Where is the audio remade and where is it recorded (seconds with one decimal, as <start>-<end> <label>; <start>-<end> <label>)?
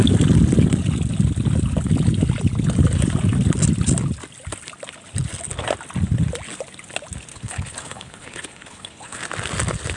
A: 0.0-7.3 recorded; 7.3-9.2 remade; 9.2-10.0 recorded